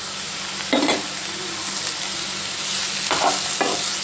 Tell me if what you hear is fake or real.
real